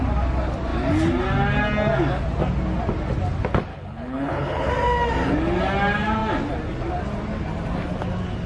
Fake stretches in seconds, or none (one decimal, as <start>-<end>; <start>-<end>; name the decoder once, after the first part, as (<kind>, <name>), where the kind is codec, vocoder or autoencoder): 3.7-4.7 (codec, HILCodec)